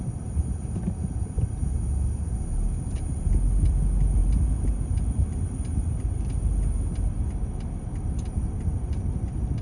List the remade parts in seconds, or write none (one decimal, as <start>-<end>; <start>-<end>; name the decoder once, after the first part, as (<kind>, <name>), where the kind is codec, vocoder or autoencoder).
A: 4.2-6.4 (vocoder, BigVGAN v2)